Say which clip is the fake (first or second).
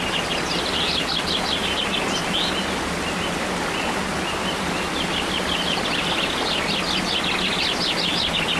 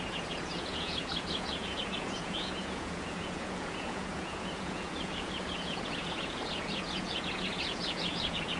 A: second